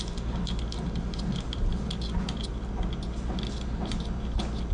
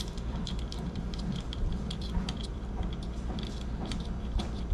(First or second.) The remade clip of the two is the second